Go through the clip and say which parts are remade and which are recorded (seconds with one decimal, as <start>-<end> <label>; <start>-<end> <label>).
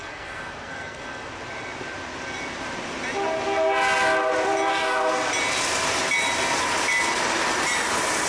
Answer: 0.0-1.3 remade; 1.3-4.7 recorded; 4.7-5.3 remade; 5.3-8.3 recorded